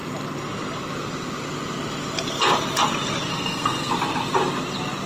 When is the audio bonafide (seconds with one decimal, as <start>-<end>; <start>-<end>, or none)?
0.0-3.3; 3.9-5.1